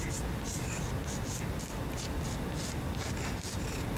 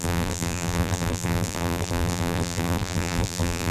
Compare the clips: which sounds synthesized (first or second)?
second